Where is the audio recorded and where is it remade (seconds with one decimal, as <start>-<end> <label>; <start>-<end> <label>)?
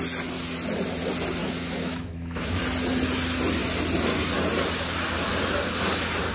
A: 0.0-1.4 recorded; 1.4-2.6 remade; 2.6-6.3 recorded